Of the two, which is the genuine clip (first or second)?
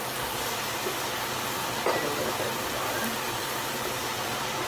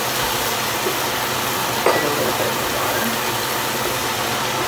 second